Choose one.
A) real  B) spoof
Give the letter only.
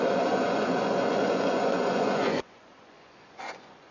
B